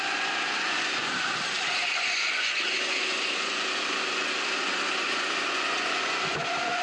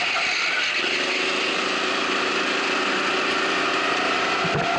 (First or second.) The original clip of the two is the second